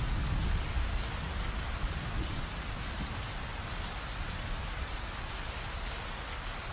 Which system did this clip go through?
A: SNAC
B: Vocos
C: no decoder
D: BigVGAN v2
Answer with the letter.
C